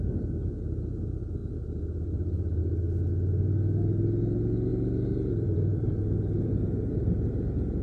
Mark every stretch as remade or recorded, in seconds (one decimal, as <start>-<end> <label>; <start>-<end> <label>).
0.0-1.4 recorded; 1.4-2.6 remade; 2.6-4.7 recorded; 4.7-6.0 remade; 6.0-7.8 recorded